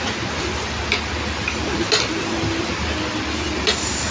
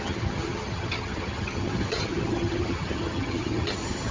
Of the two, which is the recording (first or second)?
first